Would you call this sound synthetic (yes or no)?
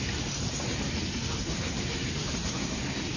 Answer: no